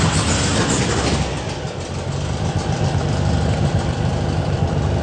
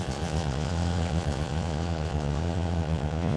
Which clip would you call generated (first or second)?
second